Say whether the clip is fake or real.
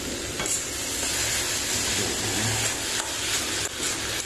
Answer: real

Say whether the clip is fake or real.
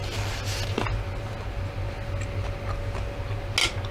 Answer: real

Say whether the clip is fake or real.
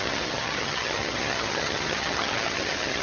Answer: fake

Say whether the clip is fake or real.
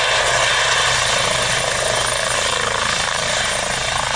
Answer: real